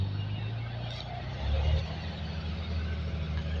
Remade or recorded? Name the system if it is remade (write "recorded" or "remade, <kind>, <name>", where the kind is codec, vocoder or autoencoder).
recorded